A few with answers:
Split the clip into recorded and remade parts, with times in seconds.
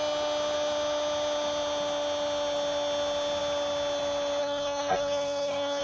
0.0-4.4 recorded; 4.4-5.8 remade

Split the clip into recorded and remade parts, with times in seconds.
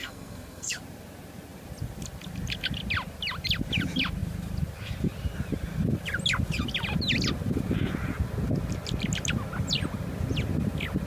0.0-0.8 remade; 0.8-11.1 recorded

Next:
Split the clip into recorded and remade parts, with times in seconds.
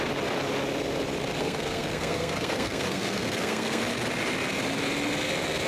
0.0-1.4 recorded; 1.4-3.8 remade; 3.8-5.7 recorded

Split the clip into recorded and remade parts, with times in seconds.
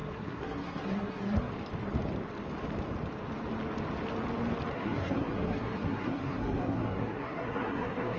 0.0-1.5 remade; 1.5-4.7 recorded; 4.7-8.2 remade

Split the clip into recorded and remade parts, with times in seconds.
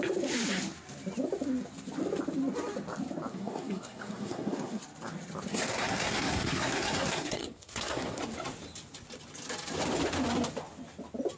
0.0-3.3 recorded; 3.3-4.8 remade; 4.8-5.5 recorded; 5.5-8.2 remade; 8.2-11.4 recorded